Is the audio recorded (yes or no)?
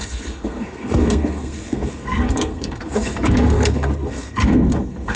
no